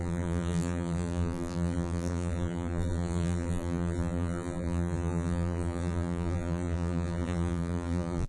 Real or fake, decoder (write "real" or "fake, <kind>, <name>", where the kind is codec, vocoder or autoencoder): fake, vocoder, BigVGAN v2